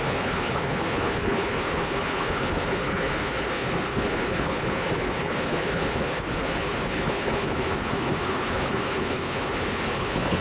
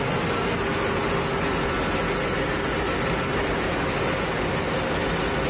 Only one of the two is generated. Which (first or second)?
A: first